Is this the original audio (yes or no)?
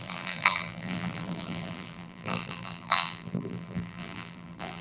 no